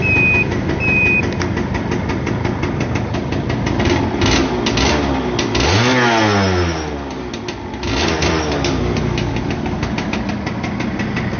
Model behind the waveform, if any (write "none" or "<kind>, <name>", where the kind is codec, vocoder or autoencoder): none